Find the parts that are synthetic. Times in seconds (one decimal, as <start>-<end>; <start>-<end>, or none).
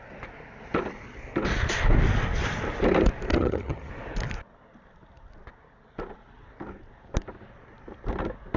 3.3-3.9